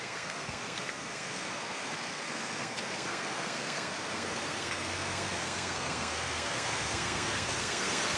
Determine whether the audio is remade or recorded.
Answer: remade